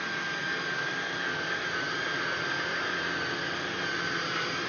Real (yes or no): yes